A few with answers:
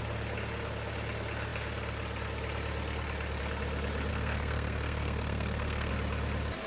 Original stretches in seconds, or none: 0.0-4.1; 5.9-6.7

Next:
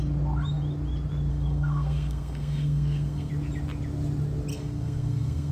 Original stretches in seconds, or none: 0.0-1.3; 3.3-4.5

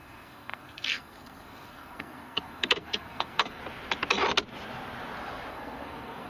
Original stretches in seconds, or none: 3.6-5.5

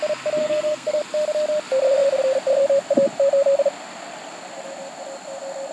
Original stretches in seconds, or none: 0.0-0.4; 1.0-5.7

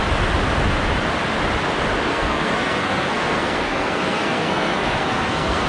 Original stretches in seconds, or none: 0.0-2.1

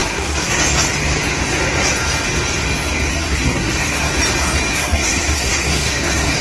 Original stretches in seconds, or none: 0.6-3.1; 4.1-4.7

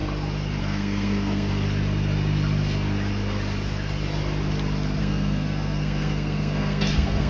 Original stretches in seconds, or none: 0.0-0.6; 1.5-5.0